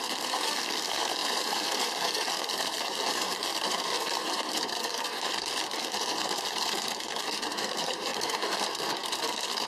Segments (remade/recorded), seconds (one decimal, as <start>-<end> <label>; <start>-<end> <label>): 0.0-9.7 remade